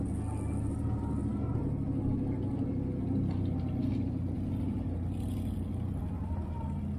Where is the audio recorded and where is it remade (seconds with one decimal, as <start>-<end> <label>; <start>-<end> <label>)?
0.0-7.0 recorded